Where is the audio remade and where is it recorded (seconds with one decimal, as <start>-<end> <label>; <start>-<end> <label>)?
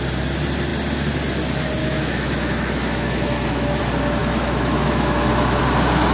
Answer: 0.0-1.8 recorded; 1.8-3.8 remade; 3.8-4.2 recorded; 4.2-5.6 remade; 5.6-6.1 recorded